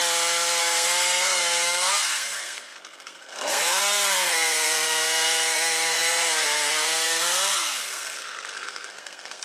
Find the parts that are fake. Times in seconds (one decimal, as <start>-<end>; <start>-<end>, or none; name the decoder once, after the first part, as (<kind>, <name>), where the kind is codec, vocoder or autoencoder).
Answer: 0.6-9.4 (codec, SNAC)